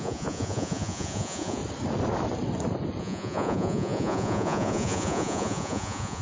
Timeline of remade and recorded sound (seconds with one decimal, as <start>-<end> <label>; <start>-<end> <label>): 0.0-1.6 remade; 1.6-3.0 recorded; 3.0-6.2 remade

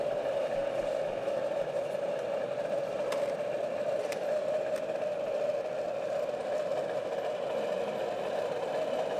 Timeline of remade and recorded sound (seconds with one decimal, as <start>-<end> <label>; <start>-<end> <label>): 0.0-9.2 recorded

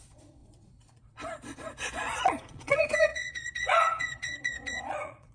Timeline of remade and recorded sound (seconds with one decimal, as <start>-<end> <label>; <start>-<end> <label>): 0.0-5.3 remade

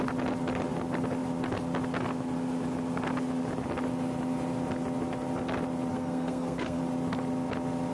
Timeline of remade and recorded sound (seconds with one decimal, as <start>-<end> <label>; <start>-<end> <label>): 0.0-5.9 recorded; 5.9-6.8 remade; 6.8-7.9 recorded

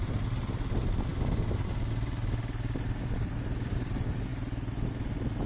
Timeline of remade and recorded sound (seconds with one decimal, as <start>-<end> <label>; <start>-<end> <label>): 0.0-5.5 recorded